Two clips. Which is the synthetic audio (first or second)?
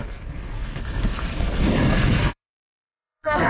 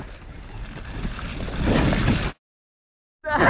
first